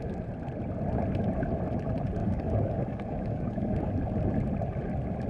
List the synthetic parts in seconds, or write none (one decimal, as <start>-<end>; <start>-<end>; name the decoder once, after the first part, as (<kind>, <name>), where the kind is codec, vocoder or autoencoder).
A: 2.2-3.9 (codec, DAC)